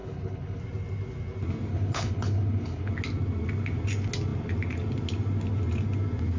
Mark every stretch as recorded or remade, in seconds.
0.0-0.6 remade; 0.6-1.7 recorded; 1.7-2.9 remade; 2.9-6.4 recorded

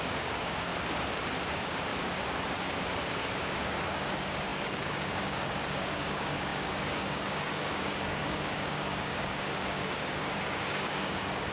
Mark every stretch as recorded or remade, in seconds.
0.0-0.7 remade; 0.7-1.4 recorded; 1.4-1.9 remade; 1.9-3.5 recorded; 3.5-11.5 remade

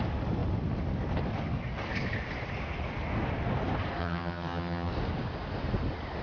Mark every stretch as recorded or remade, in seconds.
0.0-4.0 recorded; 4.0-4.9 remade; 4.9-6.2 recorded

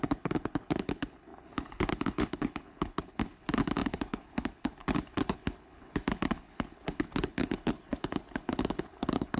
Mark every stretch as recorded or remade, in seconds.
0.0-9.4 remade